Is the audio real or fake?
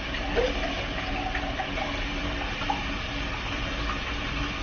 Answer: real